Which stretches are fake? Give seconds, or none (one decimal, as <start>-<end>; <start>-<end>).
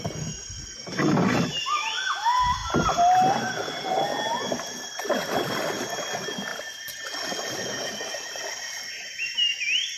none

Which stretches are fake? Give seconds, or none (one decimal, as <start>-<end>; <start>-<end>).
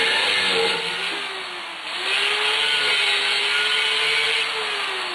none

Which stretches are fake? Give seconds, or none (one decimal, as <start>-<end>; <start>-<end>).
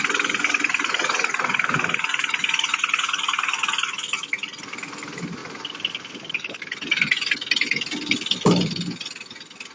none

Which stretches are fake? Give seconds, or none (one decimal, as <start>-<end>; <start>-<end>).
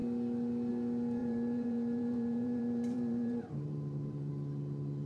1.2-4.3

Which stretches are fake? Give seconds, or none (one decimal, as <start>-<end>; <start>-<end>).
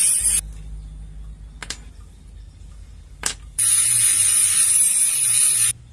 1.6-5.1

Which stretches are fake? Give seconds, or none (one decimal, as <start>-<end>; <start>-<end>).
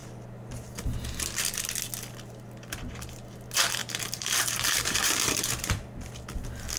3.8-5.7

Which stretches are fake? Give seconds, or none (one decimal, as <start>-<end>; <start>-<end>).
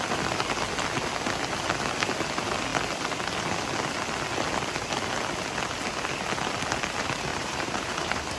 7.3-8.4